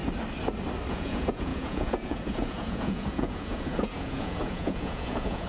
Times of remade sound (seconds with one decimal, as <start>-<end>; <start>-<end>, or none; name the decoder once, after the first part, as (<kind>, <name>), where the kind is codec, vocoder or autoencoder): 0.9-5.5 (vocoder, Vocos)